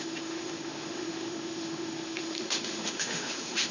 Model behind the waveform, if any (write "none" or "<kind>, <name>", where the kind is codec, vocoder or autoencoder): autoencoder, DAC-VAE